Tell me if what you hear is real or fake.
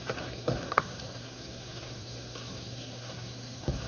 fake